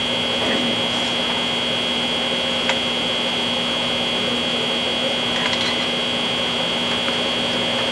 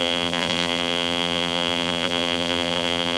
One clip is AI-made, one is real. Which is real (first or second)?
first